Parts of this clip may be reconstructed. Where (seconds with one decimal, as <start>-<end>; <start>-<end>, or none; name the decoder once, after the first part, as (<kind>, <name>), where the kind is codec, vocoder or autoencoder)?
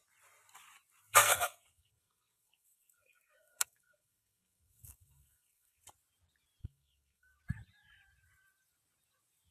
1.2-5.8 (codec, SNAC); 6.6-7.4